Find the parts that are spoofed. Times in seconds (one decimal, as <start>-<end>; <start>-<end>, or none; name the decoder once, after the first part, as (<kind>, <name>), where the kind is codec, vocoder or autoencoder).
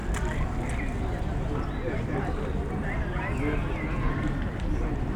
0.0-1.2 (vocoder, BigVGAN v2)